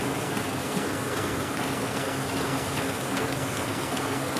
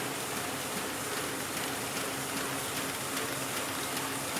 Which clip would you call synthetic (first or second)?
first